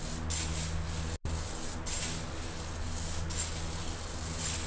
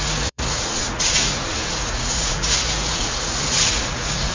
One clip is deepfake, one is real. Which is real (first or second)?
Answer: first